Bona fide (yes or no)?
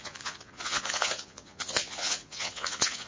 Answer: no